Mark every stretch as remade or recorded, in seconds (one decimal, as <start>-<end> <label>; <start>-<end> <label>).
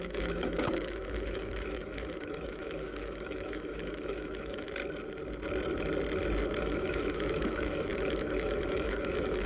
0.0-4.8 remade; 4.8-6.6 recorded; 6.6-9.5 remade